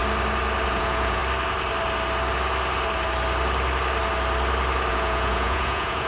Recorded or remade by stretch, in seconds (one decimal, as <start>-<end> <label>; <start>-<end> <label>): 0.0-0.7 recorded; 0.7-1.2 remade; 1.2-4.9 recorded; 4.9-6.1 remade